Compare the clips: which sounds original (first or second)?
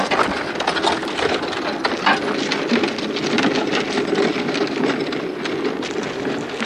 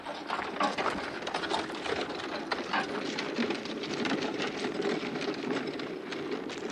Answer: first